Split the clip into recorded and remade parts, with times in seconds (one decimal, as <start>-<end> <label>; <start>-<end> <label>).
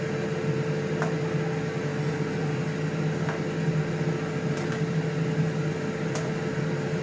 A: 0.0-7.0 recorded